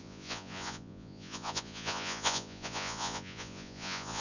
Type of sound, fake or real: fake